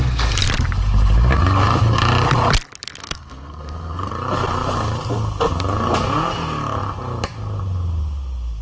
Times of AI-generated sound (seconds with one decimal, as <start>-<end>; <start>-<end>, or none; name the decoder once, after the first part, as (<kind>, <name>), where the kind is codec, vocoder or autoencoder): 3.0-4.1 (codec, SNAC)